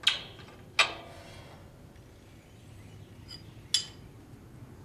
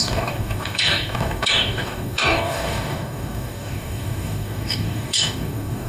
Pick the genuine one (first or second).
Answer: first